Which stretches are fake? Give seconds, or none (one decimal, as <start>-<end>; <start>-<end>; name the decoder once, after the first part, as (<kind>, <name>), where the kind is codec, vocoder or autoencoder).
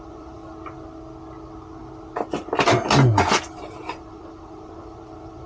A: 0.0-0.4 (vocoder, BigVGAN v2); 3.3-5.5